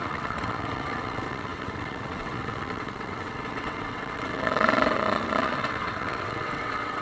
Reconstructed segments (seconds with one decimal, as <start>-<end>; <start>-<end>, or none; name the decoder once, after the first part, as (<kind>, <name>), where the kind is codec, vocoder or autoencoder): 0.0-7.0 (vocoder, WaveNeXt)